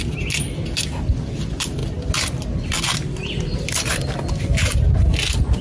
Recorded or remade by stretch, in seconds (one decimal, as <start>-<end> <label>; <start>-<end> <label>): 0.0-5.6 recorded